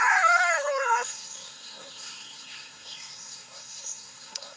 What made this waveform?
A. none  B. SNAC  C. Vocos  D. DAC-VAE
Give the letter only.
B